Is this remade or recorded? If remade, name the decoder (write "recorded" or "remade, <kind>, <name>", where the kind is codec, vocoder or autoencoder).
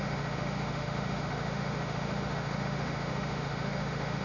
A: remade, autoencoder, DAC-VAE